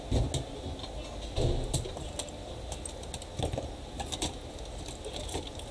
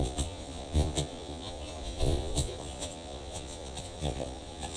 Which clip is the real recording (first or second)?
first